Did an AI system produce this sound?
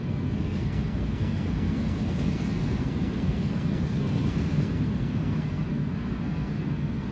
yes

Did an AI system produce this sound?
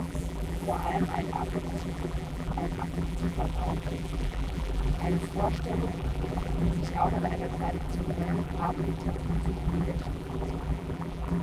yes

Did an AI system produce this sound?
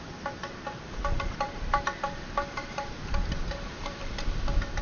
yes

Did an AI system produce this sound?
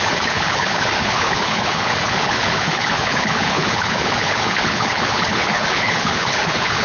yes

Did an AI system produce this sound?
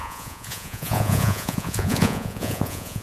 yes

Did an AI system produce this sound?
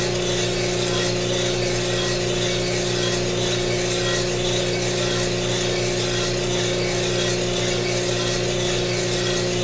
no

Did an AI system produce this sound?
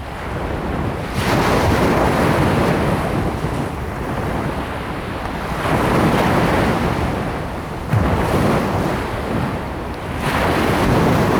no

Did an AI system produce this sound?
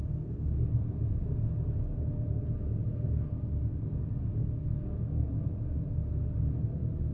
no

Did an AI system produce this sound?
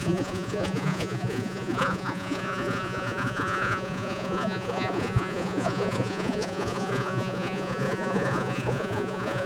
yes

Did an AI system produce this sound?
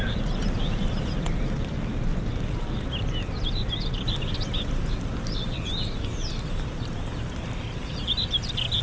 no